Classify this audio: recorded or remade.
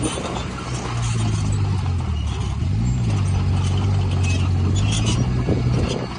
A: recorded